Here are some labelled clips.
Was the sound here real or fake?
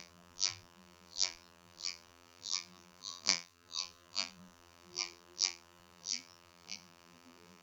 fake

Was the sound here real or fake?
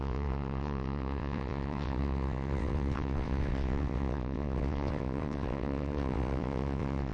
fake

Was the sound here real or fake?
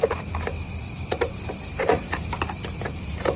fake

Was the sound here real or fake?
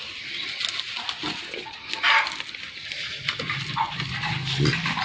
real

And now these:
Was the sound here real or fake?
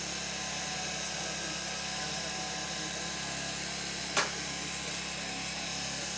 real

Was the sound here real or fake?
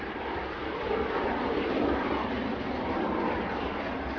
real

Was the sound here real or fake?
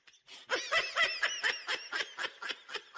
real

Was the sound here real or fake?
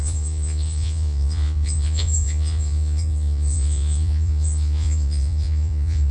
fake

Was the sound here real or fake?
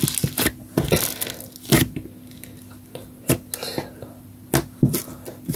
real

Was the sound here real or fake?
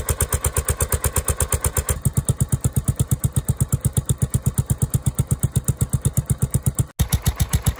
real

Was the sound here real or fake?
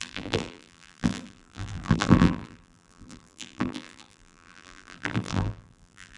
fake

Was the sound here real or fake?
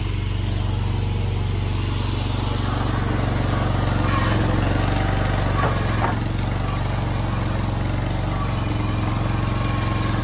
real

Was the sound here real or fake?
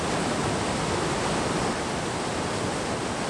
real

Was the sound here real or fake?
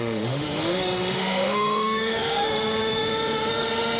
fake